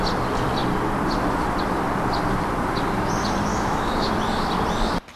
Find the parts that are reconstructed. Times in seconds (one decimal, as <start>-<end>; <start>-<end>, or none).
3.5-4.1